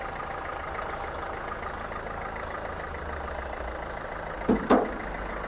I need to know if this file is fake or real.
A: real